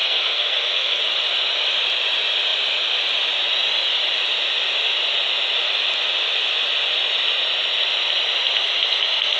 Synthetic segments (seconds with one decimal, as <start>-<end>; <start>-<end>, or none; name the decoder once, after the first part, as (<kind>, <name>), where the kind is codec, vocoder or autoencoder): 0.0-1.0 (codec, SNAC)